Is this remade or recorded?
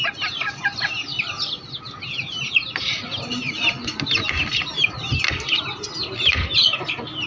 recorded